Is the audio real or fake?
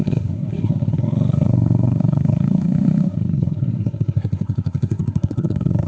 fake